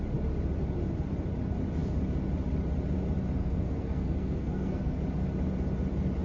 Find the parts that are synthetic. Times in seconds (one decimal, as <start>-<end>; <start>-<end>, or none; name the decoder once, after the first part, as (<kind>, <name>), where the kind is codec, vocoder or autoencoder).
3.4-5.0 (codec, SNAC)